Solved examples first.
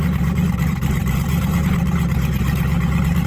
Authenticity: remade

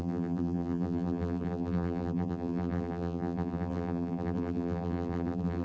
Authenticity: remade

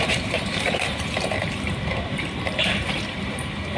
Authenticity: remade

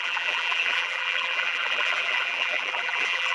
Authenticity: remade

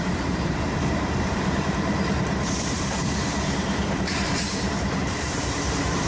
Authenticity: remade